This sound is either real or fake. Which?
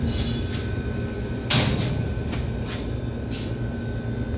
real